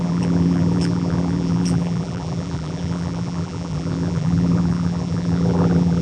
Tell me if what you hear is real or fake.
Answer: fake